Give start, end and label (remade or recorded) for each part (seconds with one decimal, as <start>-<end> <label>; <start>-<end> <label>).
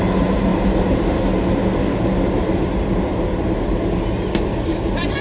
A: 0.0-5.2 recorded